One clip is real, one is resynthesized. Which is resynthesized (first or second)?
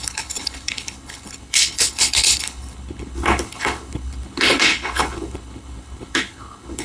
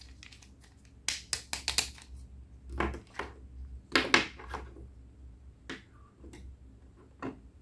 first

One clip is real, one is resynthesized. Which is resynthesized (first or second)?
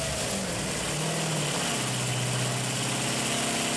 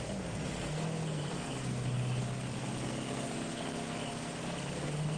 second